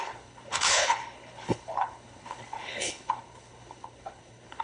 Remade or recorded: remade